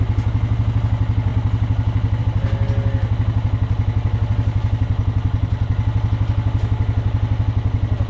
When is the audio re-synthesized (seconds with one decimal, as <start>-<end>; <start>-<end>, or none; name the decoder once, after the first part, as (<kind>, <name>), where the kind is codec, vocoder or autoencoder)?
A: none